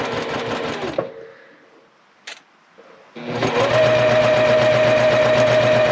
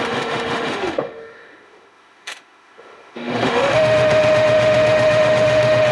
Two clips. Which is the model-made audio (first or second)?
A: second